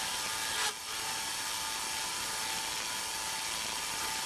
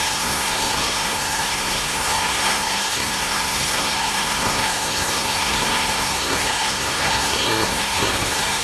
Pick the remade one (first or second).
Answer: second